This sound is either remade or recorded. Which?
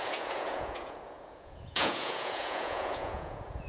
remade